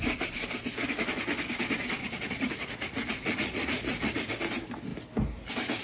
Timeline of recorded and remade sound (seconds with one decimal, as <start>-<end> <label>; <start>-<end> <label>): 0.0-2.0 recorded; 2.0-4.3 remade; 4.3-5.8 recorded